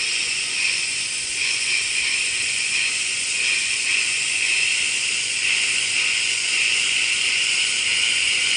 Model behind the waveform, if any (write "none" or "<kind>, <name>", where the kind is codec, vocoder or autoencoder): vocoder, Vocos